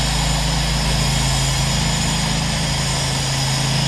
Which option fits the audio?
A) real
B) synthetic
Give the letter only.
A